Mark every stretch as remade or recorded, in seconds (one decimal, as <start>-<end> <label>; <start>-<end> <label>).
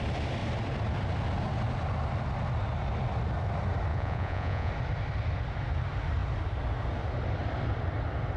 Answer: 0.0-3.9 recorded; 3.9-4.7 remade; 4.7-8.4 recorded